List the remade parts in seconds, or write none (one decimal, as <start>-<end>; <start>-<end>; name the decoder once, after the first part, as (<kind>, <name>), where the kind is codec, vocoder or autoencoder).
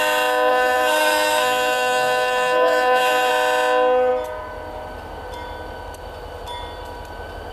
0.5-3.3 (codec, SNAC)